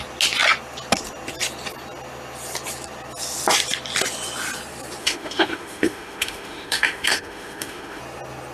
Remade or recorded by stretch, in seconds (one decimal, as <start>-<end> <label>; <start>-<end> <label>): 0.0-5.0 recorded; 5.0-8.0 remade; 8.0-8.5 recorded